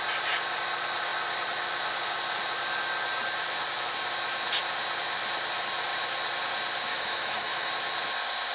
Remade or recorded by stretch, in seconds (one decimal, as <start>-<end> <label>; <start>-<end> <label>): 0.0-6.9 recorded; 6.9-7.7 remade; 7.7-8.5 recorded